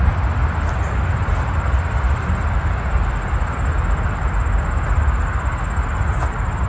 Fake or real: real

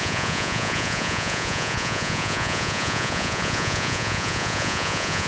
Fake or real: fake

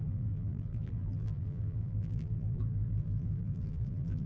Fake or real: fake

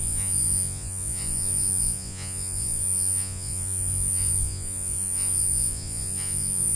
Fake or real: fake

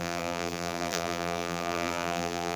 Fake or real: fake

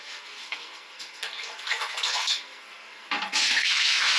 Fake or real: fake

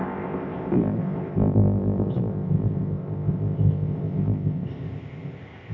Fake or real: fake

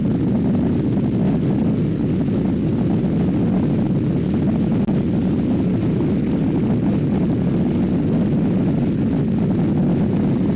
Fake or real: real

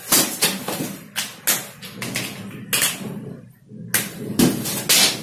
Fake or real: real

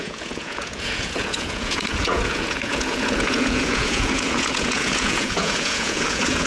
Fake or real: fake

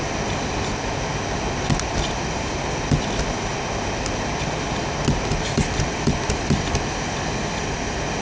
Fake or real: real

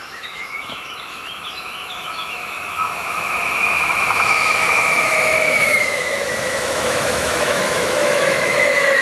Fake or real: fake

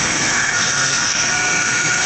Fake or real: fake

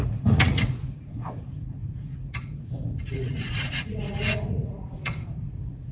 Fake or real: fake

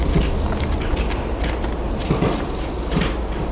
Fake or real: real